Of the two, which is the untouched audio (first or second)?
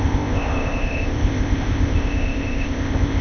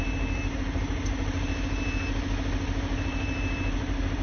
second